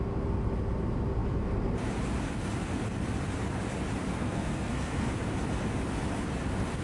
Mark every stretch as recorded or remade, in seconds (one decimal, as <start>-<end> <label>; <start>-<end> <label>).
0.0-4.1 recorded; 4.1-5.2 remade; 5.2-6.8 recorded